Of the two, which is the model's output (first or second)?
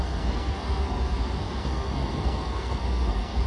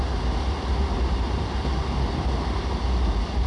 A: first